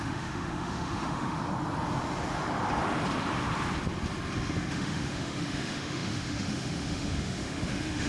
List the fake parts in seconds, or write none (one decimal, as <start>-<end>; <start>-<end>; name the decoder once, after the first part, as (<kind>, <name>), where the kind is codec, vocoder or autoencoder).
0.0-1.4 (autoencoder, DAC-VAE); 4.7-8.1